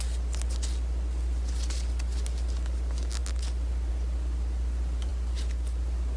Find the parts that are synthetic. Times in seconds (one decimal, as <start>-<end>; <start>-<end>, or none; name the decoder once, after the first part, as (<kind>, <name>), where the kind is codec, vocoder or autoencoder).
none